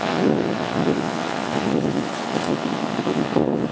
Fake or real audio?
fake